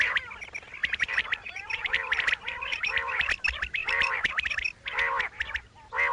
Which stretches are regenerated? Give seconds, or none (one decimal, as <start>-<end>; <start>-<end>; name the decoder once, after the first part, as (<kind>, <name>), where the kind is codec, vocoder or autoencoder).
0.8-3.3 (vocoder, BigVGAN v2); 3.8-4.5